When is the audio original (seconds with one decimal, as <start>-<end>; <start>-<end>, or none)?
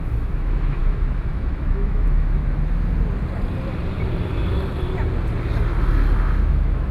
2.4-6.5